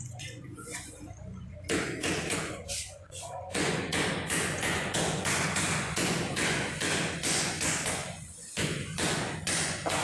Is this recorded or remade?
remade